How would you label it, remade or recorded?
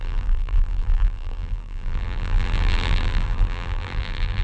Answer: remade